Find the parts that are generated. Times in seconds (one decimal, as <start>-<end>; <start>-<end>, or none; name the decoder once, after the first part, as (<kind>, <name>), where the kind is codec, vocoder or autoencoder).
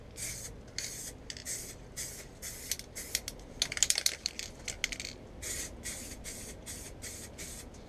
none